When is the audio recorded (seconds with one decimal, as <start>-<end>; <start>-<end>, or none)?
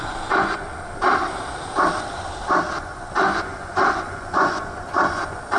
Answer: 0.7-2.8